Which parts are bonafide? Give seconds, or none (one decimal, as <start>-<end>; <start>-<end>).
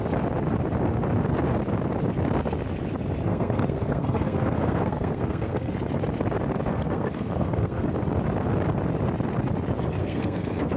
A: 0.0-3.3; 5.7-6.7; 7.9-10.0